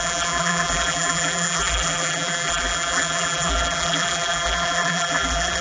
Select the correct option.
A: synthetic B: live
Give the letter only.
A